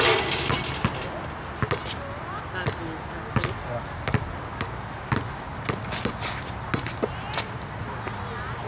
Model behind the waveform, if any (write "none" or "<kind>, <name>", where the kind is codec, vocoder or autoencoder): none